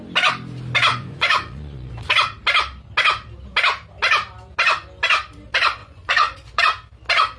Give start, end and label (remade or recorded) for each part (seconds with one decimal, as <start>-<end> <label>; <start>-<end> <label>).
0.0-0.9 recorded; 0.9-1.9 remade; 1.9-5.8 recorded; 5.8-6.6 remade; 6.6-7.4 recorded